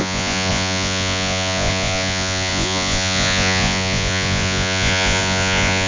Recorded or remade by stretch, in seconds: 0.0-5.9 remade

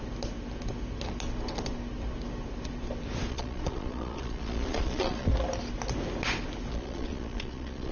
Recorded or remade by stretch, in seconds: 0.0-3.3 recorded; 3.3-5.3 remade; 5.3-6.7 recorded; 6.7-7.9 remade

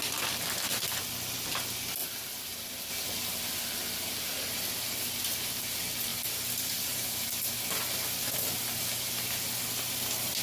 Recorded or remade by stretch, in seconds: 0.0-2.0 recorded; 2.0-2.9 remade; 2.9-6.1 recorded; 6.1-7.5 remade; 7.5-10.4 recorded

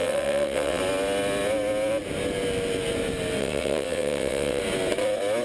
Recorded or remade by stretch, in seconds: 0.0-0.8 remade; 0.8-3.4 recorded; 3.4-4.6 remade; 4.6-5.4 recorded

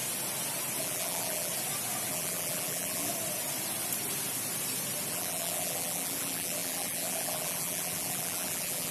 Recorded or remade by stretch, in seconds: 0.0-0.8 recorded; 0.8-1.5 remade; 1.5-2.1 recorded; 2.1-3.1 remade; 3.1-5.1 recorded; 5.1-8.9 remade

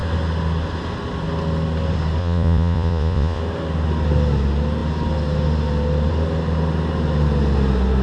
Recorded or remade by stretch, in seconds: 0.0-2.2 recorded; 2.2-3.4 remade; 3.4-8.0 recorded